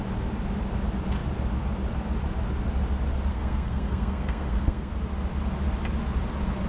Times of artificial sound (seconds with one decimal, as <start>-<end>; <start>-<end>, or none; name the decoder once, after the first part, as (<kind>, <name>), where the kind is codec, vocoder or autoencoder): 3.3-4.9 (codec, SNAC)